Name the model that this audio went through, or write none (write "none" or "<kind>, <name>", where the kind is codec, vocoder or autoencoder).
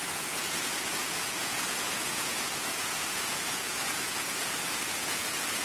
vocoder, Vocos